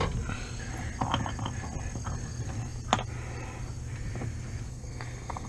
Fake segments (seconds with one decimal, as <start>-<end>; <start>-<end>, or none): 4.7-5.5